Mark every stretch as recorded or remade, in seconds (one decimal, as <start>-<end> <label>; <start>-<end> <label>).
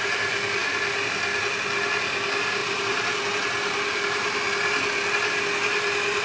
0.0-2.6 recorded; 2.6-3.2 remade; 3.2-6.2 recorded